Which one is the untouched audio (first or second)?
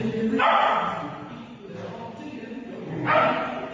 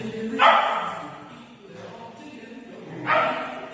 second